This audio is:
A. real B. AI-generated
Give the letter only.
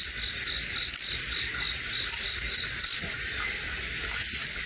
A